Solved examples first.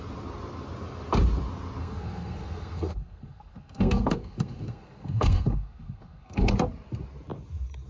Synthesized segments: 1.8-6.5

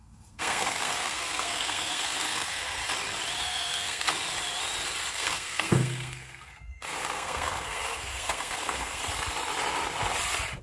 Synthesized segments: 0.0-2.8; 3.4-4.1; 5.1-9.0